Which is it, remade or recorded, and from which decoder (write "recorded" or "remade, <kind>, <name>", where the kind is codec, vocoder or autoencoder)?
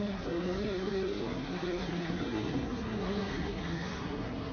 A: remade, codec, SNAC